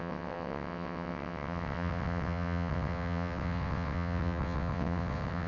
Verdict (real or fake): fake